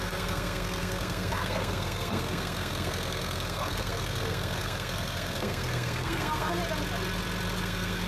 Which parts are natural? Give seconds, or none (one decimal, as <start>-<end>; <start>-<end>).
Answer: 6.6-7.6